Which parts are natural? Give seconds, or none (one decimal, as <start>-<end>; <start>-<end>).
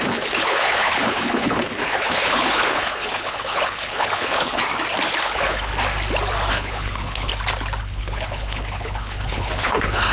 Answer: 4.6-5.2; 5.7-6.5; 7.3-7.8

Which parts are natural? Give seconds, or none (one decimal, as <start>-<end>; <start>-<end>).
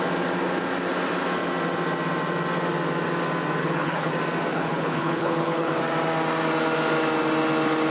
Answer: 0.0-3.6; 4.1-4.5; 5.8-7.9